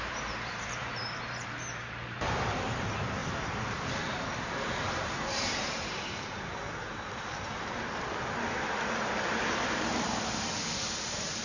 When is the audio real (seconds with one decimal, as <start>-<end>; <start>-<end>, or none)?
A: 3.2-4.0